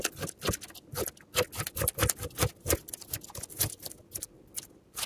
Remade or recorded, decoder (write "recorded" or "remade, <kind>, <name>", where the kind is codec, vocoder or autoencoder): recorded